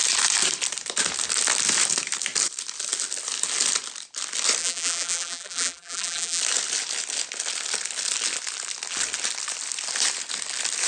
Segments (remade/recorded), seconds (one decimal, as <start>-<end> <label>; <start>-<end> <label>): 0.0-4.6 recorded; 4.6-6.4 remade; 6.4-10.9 recorded